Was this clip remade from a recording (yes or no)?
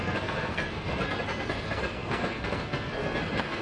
yes